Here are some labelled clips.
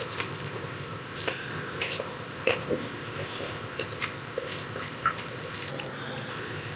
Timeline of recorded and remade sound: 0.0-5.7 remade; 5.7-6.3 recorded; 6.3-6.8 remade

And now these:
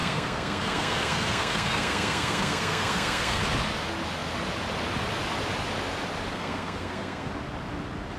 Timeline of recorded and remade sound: 0.0-3.4 remade; 3.4-6.3 recorded; 6.3-7.3 remade; 7.3-8.2 recorded

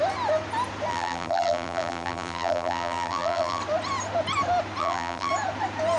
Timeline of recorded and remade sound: 0.0-0.9 recorded; 0.9-3.6 remade; 3.6-4.8 recorded; 4.8-5.3 remade; 5.3-6.0 recorded

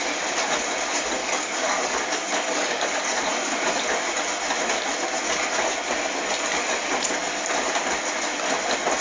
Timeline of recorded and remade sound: 0.0-1.2 recorded; 1.2-3.2 remade; 3.2-9.0 recorded